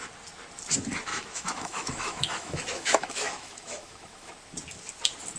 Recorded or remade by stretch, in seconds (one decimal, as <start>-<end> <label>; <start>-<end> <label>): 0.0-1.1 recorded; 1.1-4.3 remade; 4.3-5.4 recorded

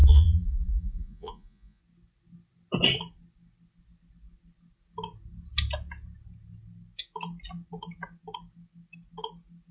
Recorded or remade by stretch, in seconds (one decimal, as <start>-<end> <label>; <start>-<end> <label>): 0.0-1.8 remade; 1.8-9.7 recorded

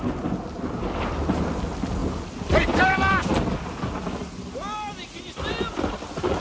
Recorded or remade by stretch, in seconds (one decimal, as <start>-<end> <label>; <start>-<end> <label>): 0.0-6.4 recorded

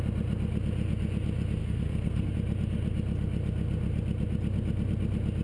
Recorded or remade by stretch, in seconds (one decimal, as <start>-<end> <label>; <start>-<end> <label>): 0.0-1.6 recorded; 1.6-2.3 remade; 2.3-5.4 recorded

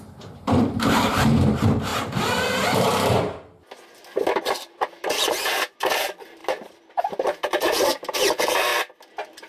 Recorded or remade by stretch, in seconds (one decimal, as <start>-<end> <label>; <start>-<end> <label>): 0.0-1.9 remade; 1.9-5.1 recorded; 5.1-8.7 remade; 8.7-9.5 recorded

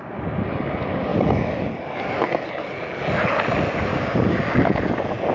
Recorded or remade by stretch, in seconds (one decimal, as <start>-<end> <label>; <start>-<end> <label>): 0.0-3.9 recorded; 3.9-4.4 remade; 4.4-5.3 recorded